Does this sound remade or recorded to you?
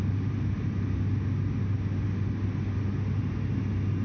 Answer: recorded